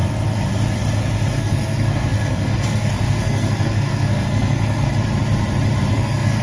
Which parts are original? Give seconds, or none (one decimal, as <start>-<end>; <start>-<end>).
0.0-1.4; 4.9-5.9